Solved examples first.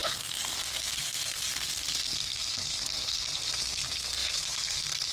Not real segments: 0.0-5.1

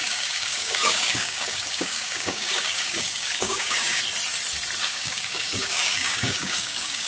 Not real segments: 0.0-4.0; 4.8-7.1

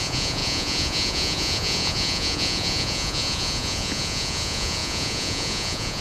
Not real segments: 0.0-6.0

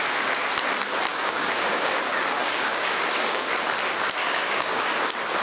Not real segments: 1.1-1.9; 2.4-3.5; 4.2-4.9

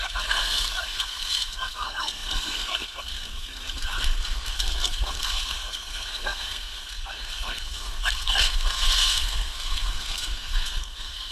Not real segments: 0.0-11.3

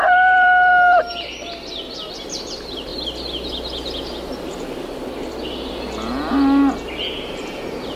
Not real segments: 0.0-0.7; 2.1-2.9; 7.3-8.0